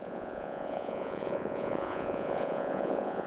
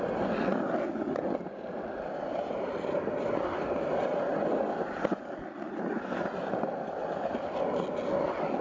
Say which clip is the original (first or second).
second